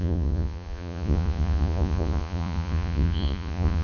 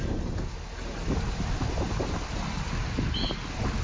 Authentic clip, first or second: second